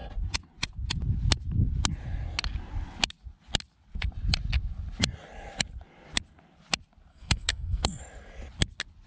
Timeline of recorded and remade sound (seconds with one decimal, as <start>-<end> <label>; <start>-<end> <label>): 0.0-7.1 recorded; 7.1-8.0 remade; 8.0-9.1 recorded